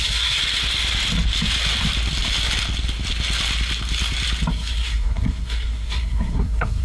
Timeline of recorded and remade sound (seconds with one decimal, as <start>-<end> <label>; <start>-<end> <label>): 0.0-0.4 remade; 0.4-4.5 recorded; 4.5-6.8 remade